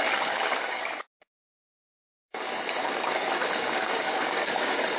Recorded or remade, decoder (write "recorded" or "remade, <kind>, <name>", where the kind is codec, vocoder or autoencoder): remade, codec, DAC